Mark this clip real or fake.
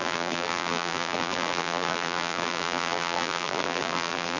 fake